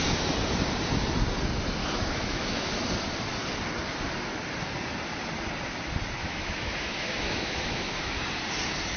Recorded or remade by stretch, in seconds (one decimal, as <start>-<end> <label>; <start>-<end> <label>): 0.0-1.8 recorded; 1.8-2.7 remade; 2.7-6.2 recorded; 6.2-8.1 remade; 8.1-9.0 recorded